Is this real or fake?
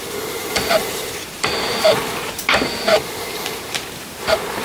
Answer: fake